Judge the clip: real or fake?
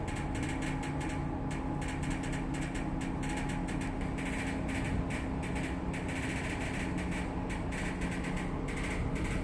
real